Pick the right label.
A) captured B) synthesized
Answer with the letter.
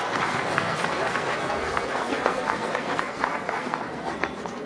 B